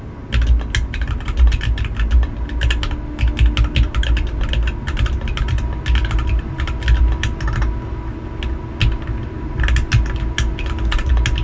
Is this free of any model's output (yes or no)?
yes